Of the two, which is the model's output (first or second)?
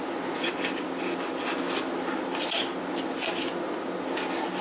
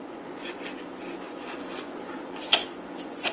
second